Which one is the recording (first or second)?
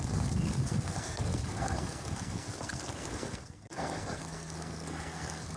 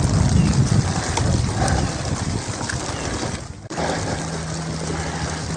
second